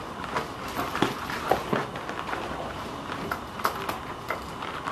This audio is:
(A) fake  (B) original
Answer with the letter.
B